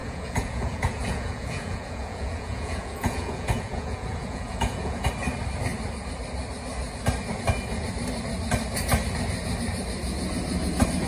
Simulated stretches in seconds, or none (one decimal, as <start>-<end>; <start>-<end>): 0.0-5.1